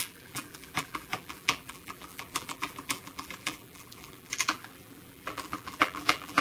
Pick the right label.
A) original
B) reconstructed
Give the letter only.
B